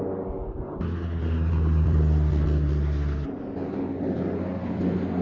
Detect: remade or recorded recorded